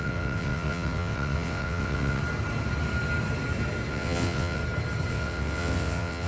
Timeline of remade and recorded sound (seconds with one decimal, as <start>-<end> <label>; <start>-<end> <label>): 0.0-2.2 remade; 2.2-3.9 recorded; 3.9-4.6 remade; 4.6-5.1 recorded; 5.1-6.3 remade